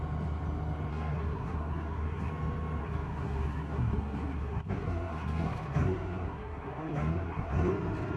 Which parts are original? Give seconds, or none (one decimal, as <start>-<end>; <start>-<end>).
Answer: 0.0-0.9; 2.3-2.8; 7.7-8.2